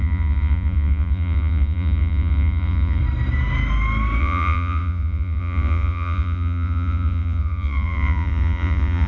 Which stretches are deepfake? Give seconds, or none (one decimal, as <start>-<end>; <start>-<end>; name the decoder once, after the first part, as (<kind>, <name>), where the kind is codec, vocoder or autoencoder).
0.0-3.0 (vocoder, Vocos); 4.2-9.1